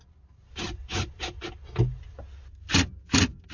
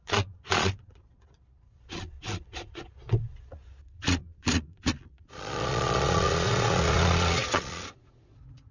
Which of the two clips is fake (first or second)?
second